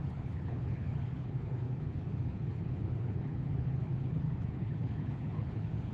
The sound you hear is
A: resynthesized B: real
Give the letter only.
A